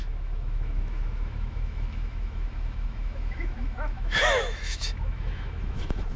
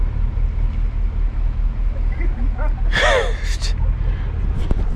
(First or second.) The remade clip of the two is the first